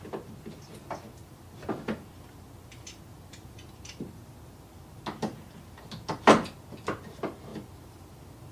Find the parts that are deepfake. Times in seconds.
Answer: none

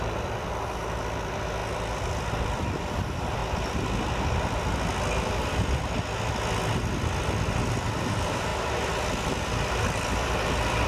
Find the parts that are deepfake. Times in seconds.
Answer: 0.0-3.4 (vocoder, BigVGAN v2); 7.7-8.5; 9.4-10.9

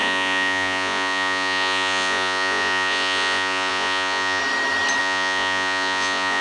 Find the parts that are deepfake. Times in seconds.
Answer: 0.0-4.4 (vocoder, Vocos); 5.0-6.4

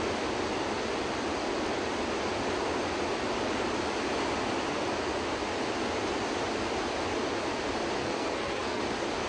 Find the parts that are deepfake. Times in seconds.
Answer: 8.0-8.8 (codec, SNAC)

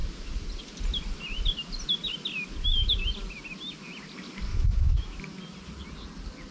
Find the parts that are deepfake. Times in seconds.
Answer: 4.5-5.2 (autoencoder, DAC-VAE)